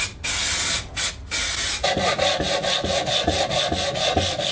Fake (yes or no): no